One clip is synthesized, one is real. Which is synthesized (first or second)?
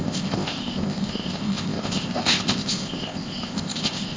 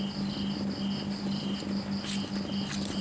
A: first